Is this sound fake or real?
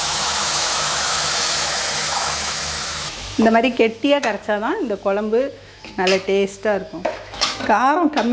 fake